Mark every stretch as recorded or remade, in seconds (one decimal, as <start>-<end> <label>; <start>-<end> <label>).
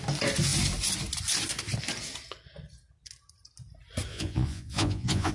0.0-4.1 recorded; 4.1-5.3 remade